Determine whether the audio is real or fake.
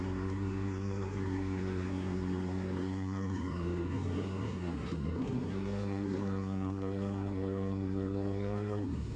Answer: fake